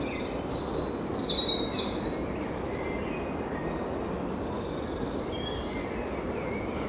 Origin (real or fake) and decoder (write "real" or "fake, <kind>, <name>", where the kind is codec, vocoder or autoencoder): real